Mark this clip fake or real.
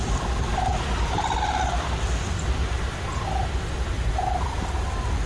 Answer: real